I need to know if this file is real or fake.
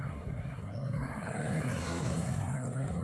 fake